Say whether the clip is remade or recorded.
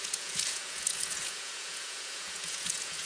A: remade